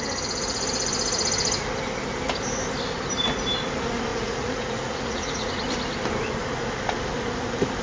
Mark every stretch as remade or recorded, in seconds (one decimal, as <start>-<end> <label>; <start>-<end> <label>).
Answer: 0.0-4.1 recorded; 4.1-5.5 remade; 5.5-7.8 recorded